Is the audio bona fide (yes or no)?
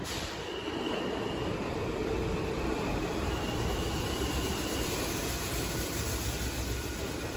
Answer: no